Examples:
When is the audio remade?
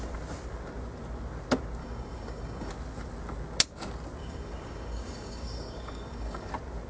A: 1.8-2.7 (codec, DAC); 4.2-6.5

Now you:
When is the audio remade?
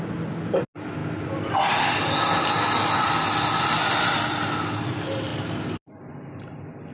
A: none